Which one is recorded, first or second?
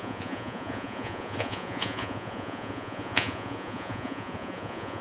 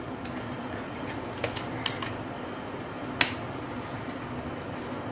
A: second